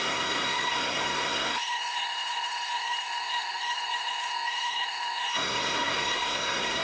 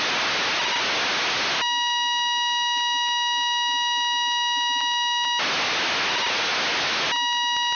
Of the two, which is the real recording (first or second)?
second